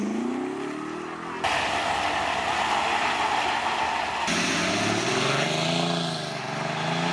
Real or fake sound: real